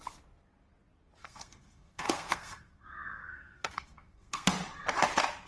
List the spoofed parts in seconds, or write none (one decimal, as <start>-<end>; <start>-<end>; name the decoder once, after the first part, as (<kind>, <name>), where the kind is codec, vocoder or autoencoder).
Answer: 1.2-4.5 (codec, SNAC)